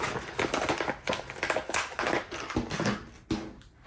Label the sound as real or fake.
real